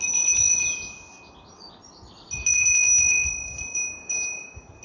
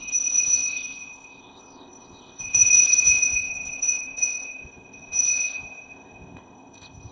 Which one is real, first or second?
first